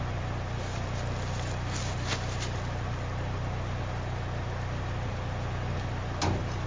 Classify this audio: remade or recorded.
recorded